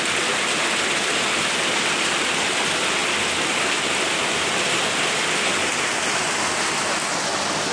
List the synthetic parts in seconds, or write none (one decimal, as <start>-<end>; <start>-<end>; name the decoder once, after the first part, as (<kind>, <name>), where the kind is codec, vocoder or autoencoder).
none